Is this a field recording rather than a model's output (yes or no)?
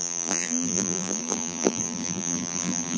no